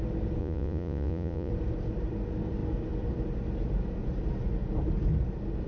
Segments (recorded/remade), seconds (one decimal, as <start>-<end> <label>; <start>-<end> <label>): 0.0-0.4 recorded; 0.4-1.5 remade; 1.5-5.7 recorded